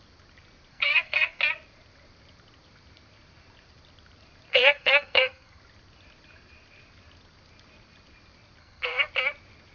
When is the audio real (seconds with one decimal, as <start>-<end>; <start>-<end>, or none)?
0.0-0.7; 1.4-4.5; 5.6-8.6; 9.1-9.7